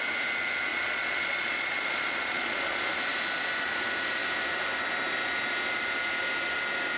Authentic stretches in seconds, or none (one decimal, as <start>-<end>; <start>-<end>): 0.0-0.7; 2.9-7.0

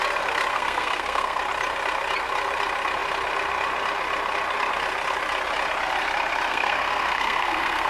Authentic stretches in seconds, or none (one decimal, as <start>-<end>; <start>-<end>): 0.0-0.5; 1.4-6.5

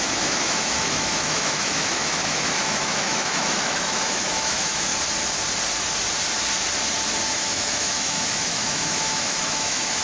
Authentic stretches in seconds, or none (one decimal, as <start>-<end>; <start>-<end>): 4.9-7.3

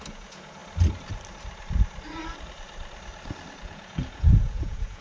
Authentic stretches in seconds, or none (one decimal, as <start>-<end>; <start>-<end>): 0.6-3.6

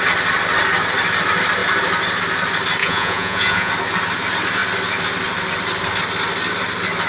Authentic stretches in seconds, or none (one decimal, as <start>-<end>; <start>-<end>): 0.0-2.8; 3.7-7.1